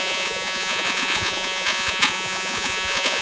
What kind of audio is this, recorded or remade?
remade